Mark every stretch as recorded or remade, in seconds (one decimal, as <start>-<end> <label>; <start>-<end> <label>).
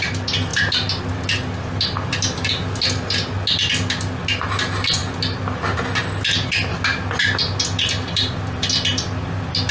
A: 0.0-9.7 recorded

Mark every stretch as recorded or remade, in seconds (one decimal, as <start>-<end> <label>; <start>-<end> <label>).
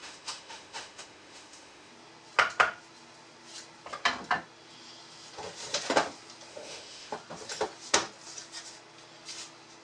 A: 0.0-1.9 remade; 1.9-6.5 recorded; 6.5-7.1 remade; 7.1-9.8 recorded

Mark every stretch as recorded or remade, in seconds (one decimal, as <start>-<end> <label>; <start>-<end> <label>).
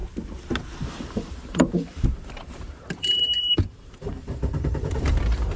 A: 0.0-0.9 recorded; 0.9-5.6 remade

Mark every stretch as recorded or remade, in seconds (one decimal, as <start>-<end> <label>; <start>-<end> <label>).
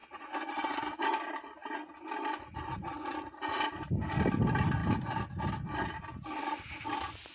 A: 0.0-7.3 recorded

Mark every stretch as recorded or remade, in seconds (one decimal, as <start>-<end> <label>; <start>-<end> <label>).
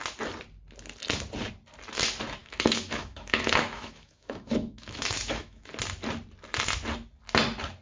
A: 0.0-2.4 recorded; 2.4-5.7 remade; 5.7-7.8 recorded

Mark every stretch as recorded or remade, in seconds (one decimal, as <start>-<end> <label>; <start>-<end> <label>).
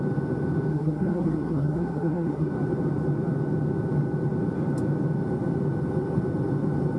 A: 0.0-0.7 recorded; 0.7-2.5 remade; 2.5-7.0 recorded